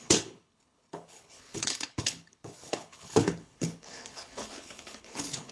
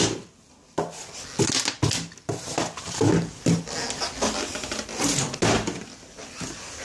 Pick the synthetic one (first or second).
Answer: first